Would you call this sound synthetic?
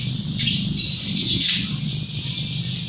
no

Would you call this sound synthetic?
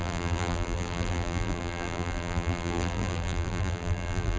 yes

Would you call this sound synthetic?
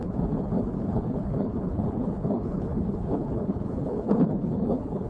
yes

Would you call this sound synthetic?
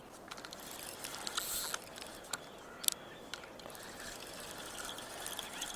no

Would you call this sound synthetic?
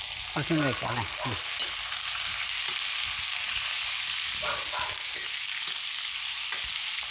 no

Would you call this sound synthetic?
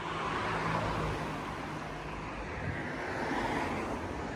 no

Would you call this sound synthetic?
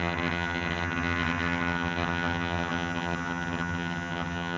yes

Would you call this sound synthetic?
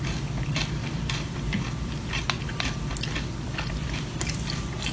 no